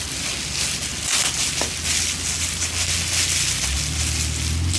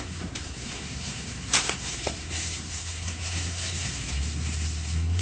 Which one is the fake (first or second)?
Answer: second